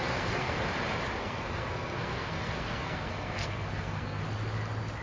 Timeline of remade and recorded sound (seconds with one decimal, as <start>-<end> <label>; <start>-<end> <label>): 0.0-0.6 remade; 0.6-1.2 recorded; 1.2-4.2 remade; 4.2-5.0 recorded